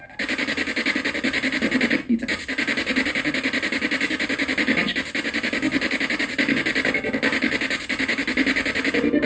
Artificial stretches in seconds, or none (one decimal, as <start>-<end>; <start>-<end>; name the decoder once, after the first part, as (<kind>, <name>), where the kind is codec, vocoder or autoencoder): none